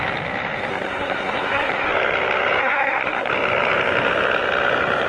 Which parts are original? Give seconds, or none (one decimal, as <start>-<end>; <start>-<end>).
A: 0.0-0.7; 1.9-2.6; 3.3-5.1